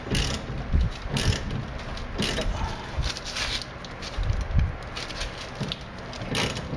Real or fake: real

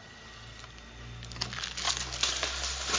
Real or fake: real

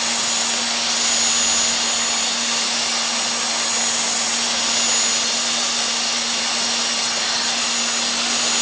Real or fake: real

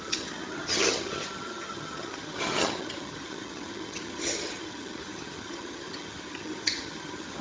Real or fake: fake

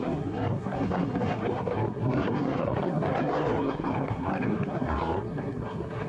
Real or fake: fake